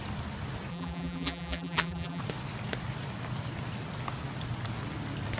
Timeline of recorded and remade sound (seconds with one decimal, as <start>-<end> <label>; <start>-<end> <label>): 0.0-0.7 recorded; 0.7-2.2 remade; 2.2-5.4 recorded